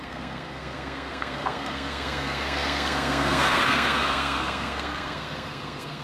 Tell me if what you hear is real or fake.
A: fake